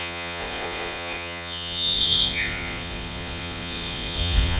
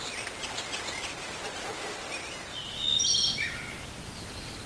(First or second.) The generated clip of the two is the first